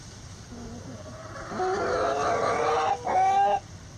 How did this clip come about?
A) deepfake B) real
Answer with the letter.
B